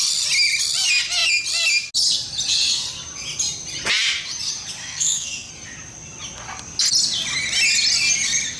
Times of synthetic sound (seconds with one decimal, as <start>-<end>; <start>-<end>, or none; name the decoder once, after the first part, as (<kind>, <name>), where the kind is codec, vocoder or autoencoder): 4.8-5.5 (codec, SNAC)